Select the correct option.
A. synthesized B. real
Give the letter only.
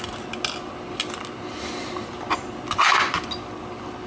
B